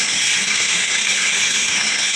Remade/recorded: remade